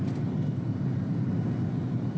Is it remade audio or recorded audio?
recorded